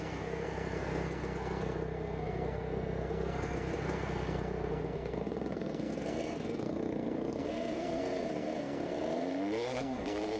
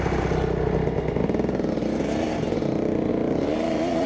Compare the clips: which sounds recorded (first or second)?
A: second